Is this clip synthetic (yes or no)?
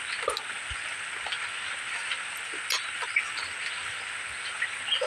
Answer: no